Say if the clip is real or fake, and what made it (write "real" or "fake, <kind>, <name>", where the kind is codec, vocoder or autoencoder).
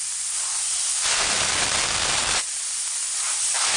real